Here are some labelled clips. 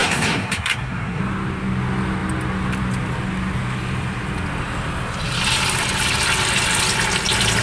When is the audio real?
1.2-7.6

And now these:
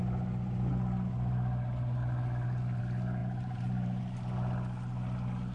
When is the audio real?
0.0-3.2; 4.0-5.5

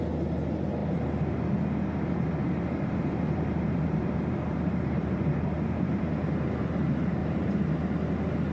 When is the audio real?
0.0-2.4; 6.0-7.2; 7.8-8.5

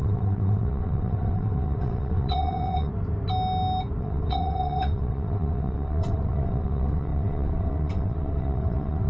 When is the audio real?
2.9-4.0

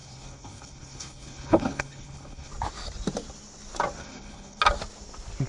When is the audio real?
2.5-4.0; 4.6-5.5